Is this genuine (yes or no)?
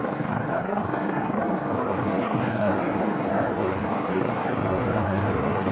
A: no